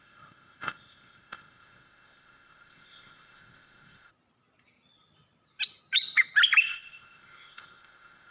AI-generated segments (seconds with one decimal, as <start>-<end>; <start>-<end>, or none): 0.0-4.1; 6.6-8.3

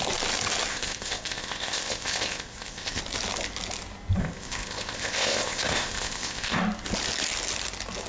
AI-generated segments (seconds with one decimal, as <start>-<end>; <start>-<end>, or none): 0.7-3.0; 4.2-6.6

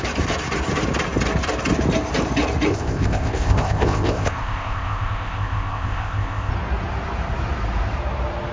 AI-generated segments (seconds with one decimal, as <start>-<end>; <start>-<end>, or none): 2.7-6.5